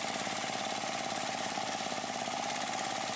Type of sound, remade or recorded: remade